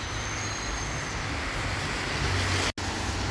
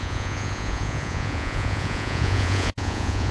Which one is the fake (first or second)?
second